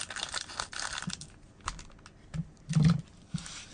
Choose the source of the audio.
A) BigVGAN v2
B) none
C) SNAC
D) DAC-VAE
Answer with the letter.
B